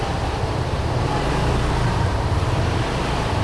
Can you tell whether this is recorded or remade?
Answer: remade